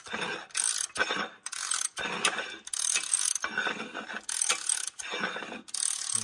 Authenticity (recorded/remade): recorded